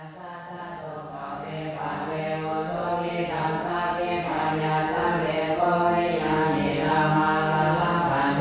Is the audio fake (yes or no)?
yes